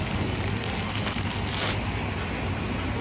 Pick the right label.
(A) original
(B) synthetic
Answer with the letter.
A